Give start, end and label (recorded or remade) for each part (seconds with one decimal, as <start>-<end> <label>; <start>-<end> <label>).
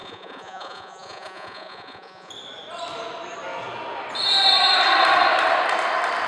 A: 0.0-2.3 remade; 2.3-6.3 recorded